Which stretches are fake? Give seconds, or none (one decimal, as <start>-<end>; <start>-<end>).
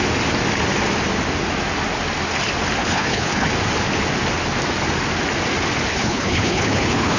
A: 2.8-3.5; 5.9-7.2